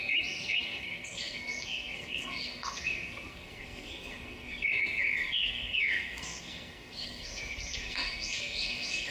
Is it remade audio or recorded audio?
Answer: remade